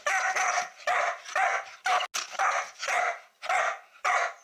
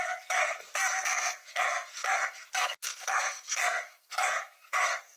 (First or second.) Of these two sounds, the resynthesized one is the second